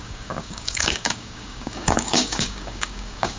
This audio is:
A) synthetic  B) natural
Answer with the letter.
A